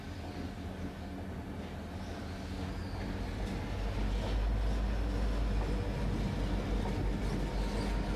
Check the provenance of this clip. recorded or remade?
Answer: recorded